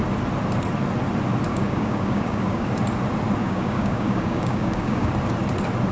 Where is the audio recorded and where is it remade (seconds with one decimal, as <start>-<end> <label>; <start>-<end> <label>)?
0.0-1.5 recorded; 1.5-2.7 remade; 2.7-3.4 recorded; 3.4-5.1 remade; 5.1-5.9 recorded